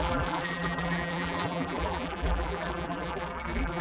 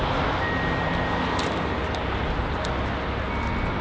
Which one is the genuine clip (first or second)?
second